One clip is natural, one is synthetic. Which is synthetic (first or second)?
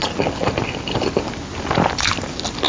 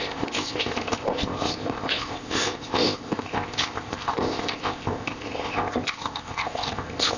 second